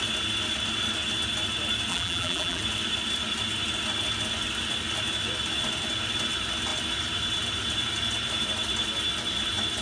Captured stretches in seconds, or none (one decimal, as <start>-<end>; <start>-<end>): 0.0-1.9; 2.6-9.8